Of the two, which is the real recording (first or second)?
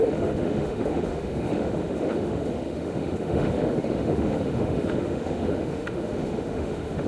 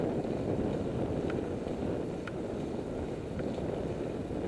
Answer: second